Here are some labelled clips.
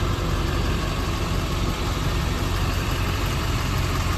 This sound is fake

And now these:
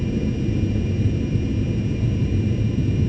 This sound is real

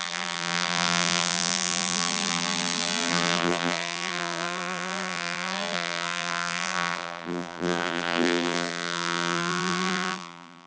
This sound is fake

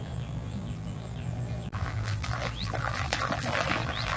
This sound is fake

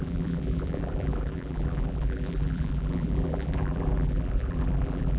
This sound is fake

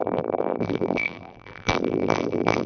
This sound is fake